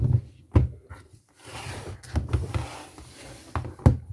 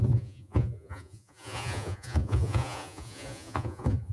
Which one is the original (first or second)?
first